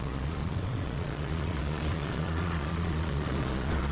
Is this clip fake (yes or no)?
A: yes